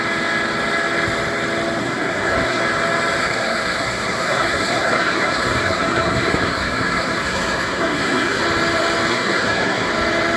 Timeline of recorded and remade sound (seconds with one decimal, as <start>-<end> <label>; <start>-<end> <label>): 0.0-1.8 recorded; 1.8-2.6 remade; 2.6-3.2 recorded; 3.2-8.4 remade; 8.4-9.1 recorded; 9.1-9.9 remade; 9.9-10.4 recorded